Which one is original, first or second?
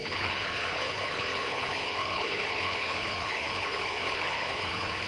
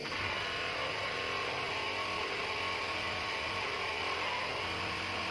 second